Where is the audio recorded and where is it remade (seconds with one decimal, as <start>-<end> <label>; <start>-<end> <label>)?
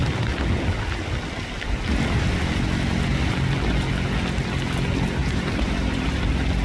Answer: 0.0-5.2 recorded; 5.2-6.1 remade; 6.1-6.6 recorded